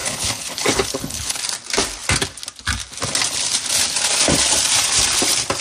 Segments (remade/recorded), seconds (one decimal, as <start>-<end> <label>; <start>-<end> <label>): 0.0-1.4 remade; 1.4-5.6 recorded